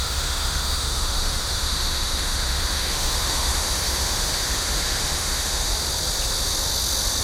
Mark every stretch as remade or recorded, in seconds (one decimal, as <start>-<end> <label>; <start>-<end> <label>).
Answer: 0.0-5.7 remade; 5.7-7.2 recorded